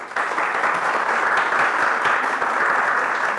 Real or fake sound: real